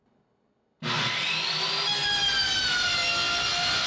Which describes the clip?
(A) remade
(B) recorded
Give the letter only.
B